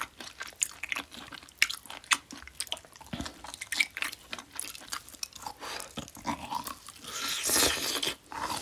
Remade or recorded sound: recorded